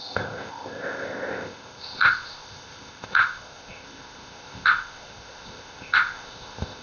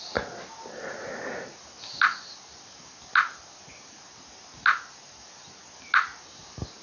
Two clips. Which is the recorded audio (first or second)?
second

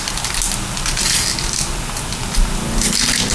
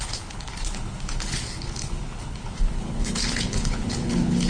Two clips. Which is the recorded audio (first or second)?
first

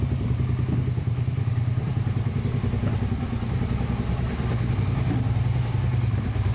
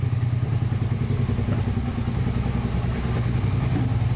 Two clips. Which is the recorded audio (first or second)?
second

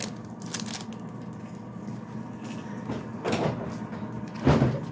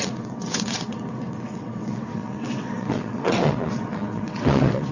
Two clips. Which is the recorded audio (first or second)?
first